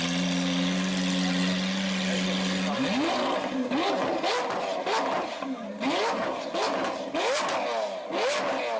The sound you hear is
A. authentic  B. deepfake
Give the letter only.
A